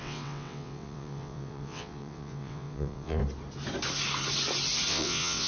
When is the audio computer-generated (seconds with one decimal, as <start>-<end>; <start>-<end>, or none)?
0.0-3.2; 4.9-5.5

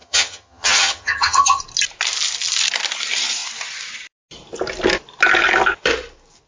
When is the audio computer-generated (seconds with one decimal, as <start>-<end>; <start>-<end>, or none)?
0.0-1.6

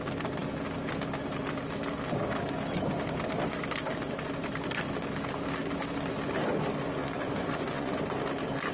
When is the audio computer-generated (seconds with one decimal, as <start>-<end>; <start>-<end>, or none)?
7.0-8.0

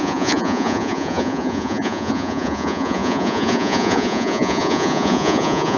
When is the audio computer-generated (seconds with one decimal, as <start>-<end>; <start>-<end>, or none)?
0.0-5.8

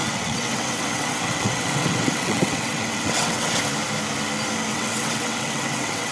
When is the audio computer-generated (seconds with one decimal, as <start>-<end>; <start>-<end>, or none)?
0.0-3.6; 4.7-6.1

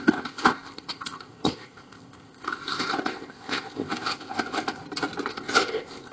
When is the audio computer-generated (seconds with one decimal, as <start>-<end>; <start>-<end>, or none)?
0.0-4.8; 5.3-6.1

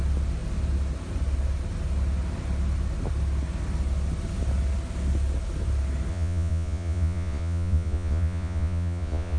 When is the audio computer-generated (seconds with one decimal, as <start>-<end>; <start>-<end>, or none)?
6.1-9.4

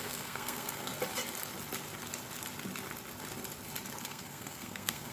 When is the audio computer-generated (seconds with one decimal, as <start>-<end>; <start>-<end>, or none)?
0.0-0.9; 4.0-5.1